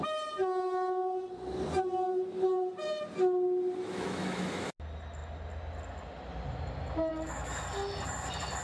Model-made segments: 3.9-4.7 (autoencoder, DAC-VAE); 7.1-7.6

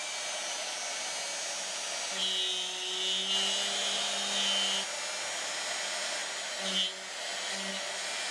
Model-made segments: none

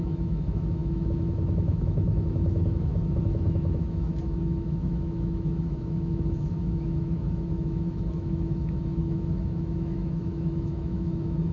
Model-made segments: 0.0-11.5 (autoencoder, DAC-VAE)

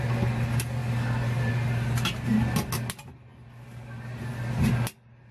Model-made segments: none

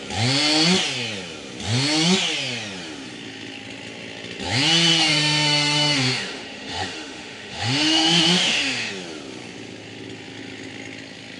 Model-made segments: 4.9-8.9 (autoencoder, DAC-VAE)